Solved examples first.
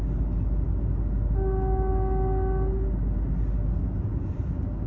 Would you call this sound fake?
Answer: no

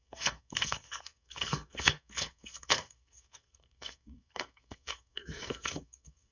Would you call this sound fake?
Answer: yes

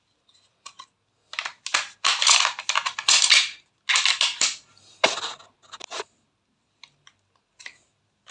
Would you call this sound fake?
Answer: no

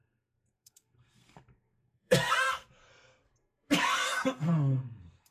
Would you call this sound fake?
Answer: yes